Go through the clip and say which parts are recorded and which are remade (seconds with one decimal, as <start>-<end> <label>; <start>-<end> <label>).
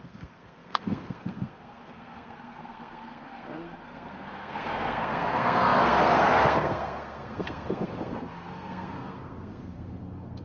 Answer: 0.0-10.4 remade